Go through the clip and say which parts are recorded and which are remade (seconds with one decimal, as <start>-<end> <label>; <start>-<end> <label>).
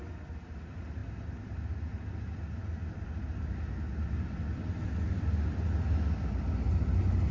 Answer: 0.0-7.3 recorded